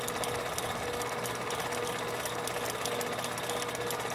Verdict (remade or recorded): recorded